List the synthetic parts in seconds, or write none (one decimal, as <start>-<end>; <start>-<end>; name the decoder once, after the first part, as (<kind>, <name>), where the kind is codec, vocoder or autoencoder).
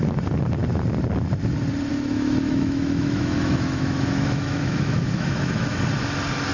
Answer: 1.9-5.8 (autoencoder, DAC-VAE)